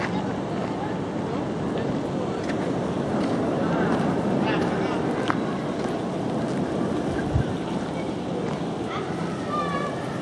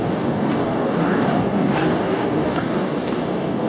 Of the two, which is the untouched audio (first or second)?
first